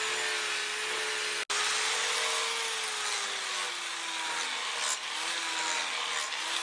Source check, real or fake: real